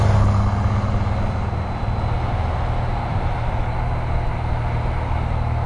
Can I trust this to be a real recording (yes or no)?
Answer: yes